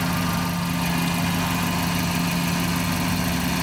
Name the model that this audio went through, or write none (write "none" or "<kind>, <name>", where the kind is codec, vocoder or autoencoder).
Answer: none